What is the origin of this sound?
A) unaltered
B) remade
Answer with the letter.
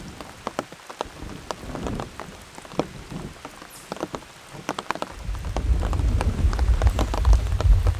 A